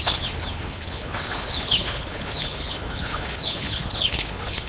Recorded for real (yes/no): no